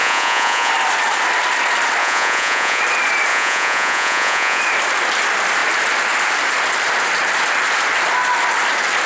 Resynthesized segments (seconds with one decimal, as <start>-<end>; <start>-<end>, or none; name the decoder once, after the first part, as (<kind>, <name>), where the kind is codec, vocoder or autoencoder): 0.0-0.7 (vocoder, Vocos); 2.0-2.8; 3.3-4.6